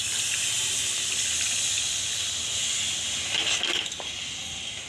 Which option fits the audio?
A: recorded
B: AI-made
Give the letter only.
A